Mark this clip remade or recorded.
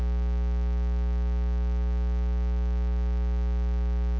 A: recorded